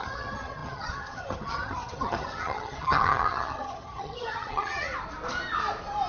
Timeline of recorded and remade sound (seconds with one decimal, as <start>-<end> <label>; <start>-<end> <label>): 0.0-4.9 remade; 4.9-6.1 recorded